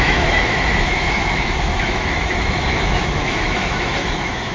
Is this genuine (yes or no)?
no